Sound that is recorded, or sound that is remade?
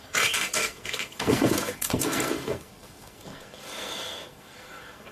remade